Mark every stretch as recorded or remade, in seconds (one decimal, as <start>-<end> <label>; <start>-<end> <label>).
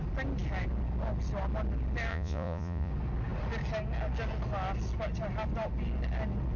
0.0-2.1 recorded; 2.1-2.9 remade; 2.9-6.6 recorded